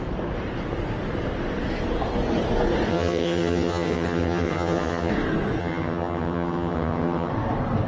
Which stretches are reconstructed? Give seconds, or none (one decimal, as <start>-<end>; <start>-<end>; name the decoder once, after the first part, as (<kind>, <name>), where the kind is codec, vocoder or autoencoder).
2.9-5.1 (vocoder, HiFi-GAN); 5.6-7.3